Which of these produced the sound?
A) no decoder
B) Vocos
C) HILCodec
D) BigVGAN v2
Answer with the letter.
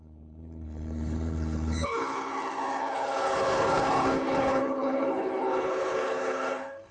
C